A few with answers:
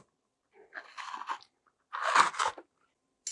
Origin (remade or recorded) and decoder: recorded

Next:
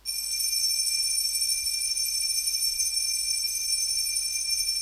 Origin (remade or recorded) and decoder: recorded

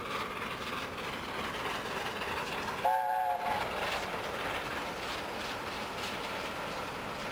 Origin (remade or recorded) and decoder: recorded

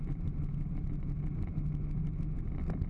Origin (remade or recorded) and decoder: recorded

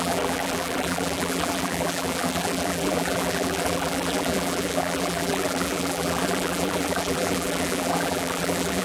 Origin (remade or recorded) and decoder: remade, vocoder, BigVGAN v2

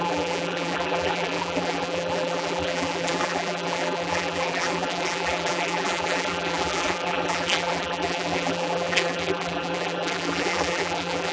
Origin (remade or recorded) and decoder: remade, vocoder, BigVGAN v2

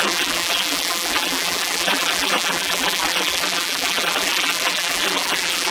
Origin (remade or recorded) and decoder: remade, vocoder, BigVGAN v2